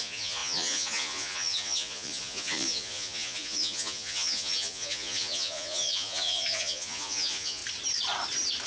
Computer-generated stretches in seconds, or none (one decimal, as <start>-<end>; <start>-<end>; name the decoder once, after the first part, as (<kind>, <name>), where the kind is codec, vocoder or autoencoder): 0.0-7.6 (vocoder, Vocos)